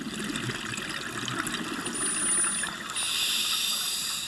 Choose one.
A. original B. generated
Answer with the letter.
A